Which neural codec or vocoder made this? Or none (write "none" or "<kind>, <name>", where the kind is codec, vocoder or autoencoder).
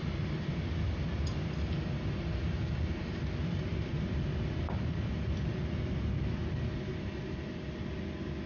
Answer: none